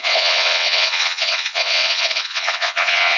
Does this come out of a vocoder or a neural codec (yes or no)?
yes